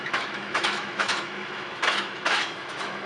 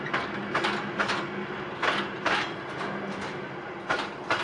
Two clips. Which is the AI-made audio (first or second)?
first